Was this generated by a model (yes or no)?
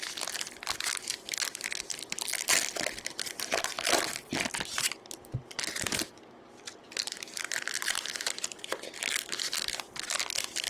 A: no